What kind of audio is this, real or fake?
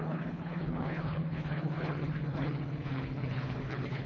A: fake